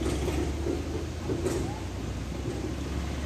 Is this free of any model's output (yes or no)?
yes